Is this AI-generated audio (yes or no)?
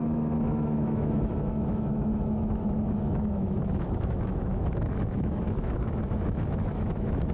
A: yes